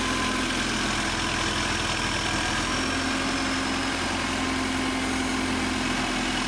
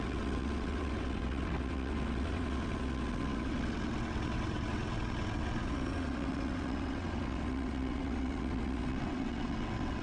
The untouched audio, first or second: first